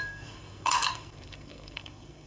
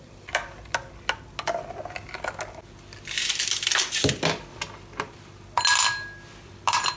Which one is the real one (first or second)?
second